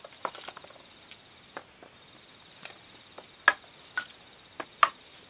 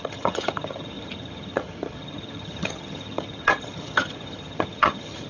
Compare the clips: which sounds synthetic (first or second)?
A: second